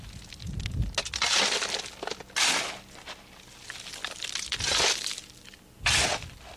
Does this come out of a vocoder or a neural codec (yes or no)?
no